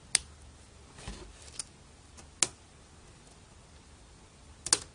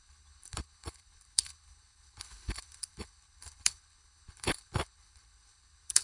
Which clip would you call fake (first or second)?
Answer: second